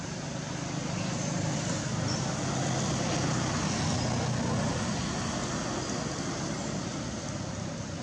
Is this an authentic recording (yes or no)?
yes